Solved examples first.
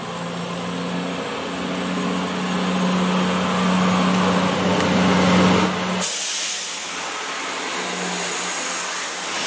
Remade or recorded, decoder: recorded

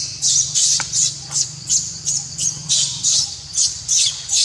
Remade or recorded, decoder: remade, vocoder, Vocos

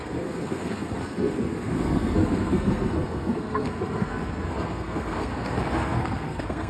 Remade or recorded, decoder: remade, codec, SNAC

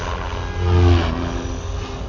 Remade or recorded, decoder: recorded